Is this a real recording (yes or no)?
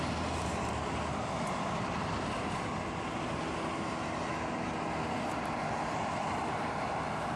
yes